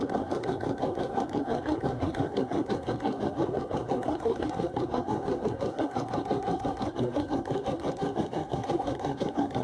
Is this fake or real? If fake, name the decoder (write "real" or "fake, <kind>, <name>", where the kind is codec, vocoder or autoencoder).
fake, codec, SNAC